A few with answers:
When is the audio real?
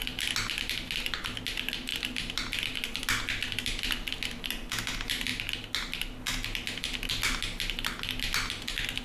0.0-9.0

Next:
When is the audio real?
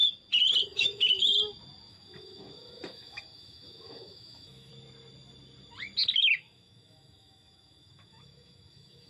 0.0-0.6; 1.3-1.9; 4.7-6.2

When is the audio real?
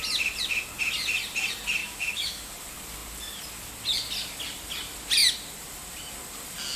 0.0-1.8; 2.5-6.8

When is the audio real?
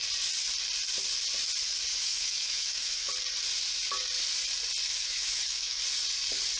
0.0-1.9; 3.1-4.9; 5.8-6.6